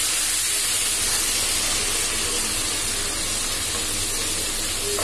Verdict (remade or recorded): recorded